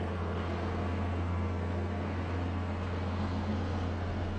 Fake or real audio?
fake